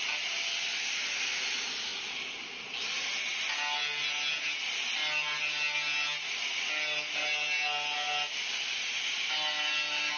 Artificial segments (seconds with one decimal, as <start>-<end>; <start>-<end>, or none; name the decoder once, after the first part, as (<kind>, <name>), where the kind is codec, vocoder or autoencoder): none